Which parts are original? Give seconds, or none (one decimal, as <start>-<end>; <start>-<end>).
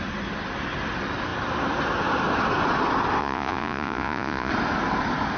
0.0-3.2; 4.5-5.4